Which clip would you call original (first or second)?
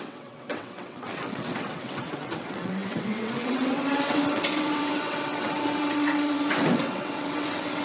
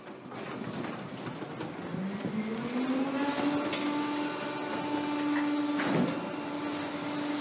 second